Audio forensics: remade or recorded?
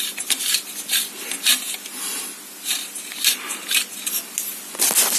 recorded